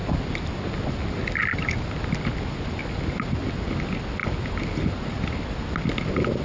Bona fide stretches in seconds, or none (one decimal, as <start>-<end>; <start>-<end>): 0.0-6.4